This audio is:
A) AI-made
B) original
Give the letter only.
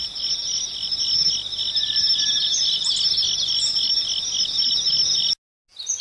B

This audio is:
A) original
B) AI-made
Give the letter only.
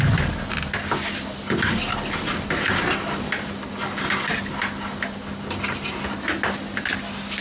A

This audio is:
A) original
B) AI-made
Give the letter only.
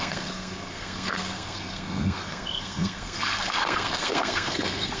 B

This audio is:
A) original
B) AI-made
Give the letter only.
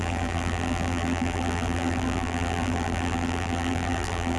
B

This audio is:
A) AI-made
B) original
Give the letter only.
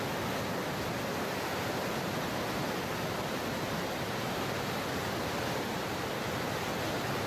B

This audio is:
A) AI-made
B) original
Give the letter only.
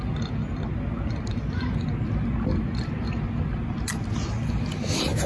B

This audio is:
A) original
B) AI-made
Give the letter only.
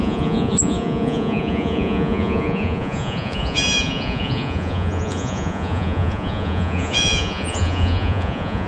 B